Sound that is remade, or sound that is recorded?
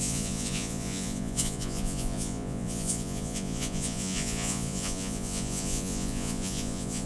remade